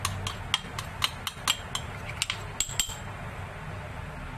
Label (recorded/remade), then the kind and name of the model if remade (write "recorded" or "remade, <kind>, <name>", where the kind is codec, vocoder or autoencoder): recorded